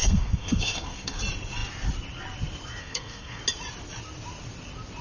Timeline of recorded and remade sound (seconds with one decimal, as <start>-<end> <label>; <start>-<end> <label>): 0.0-1.2 remade; 1.2-2.8 recorded; 2.8-3.4 remade; 3.4-5.0 recorded